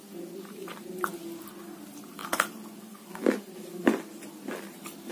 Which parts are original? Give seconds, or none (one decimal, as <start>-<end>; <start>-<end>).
0.0-5.1